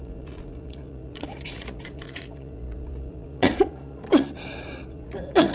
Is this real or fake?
fake